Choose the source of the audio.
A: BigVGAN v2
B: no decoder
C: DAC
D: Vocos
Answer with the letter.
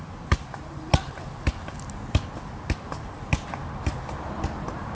B